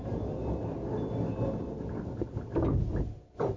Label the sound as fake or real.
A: real